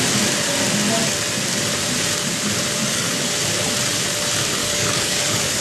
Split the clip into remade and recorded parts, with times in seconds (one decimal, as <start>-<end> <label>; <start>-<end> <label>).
0.0-2.8 recorded; 2.8-3.3 remade; 3.3-4.6 recorded; 4.6-5.6 remade